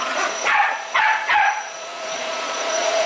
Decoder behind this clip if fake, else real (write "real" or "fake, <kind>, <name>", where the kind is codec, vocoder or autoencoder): fake, vocoder, Vocos